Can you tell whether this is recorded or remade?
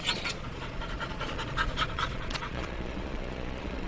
remade